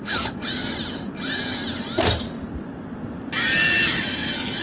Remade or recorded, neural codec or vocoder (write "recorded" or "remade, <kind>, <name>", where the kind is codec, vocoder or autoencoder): recorded